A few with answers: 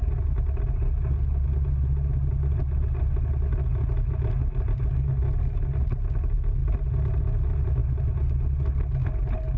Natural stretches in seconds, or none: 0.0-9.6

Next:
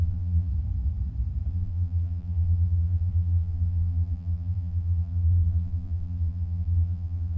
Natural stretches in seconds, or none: 0.5-1.5

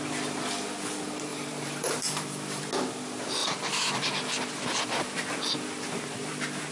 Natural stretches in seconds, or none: 0.0-1.3; 2.6-6.7

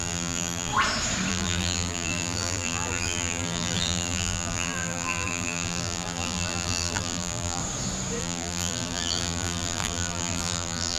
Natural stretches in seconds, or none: 0.7-1.3; 7.6-8.2

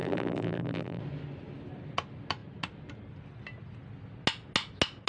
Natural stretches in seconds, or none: 1.0-5.1